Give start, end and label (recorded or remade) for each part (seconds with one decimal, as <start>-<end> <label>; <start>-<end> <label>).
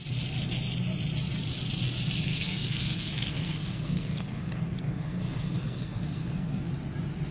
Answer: 0.0-2.3 recorded; 2.3-6.7 remade; 6.7-7.3 recorded